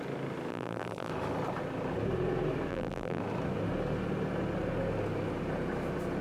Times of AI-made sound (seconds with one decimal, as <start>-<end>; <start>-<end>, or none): 0.5-1.1; 2.7-3.2